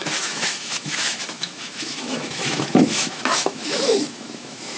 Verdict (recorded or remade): remade